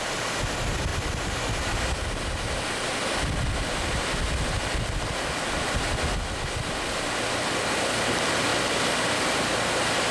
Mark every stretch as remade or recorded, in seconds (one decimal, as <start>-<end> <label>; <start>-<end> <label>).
0.0-10.1 recorded